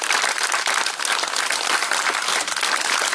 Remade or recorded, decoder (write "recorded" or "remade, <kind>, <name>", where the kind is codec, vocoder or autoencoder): remade, vocoder, BigVGAN v2